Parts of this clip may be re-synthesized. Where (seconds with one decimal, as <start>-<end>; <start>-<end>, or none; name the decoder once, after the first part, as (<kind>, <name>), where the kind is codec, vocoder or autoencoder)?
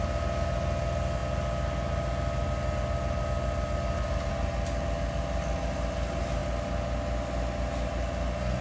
none